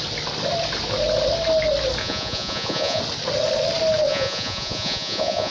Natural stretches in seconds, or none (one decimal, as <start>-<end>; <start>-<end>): 0.0-2.0; 3.0-4.1